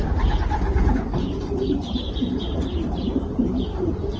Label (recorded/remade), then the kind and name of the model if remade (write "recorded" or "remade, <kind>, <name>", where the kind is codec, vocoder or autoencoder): remade, vocoder, BigVGAN v2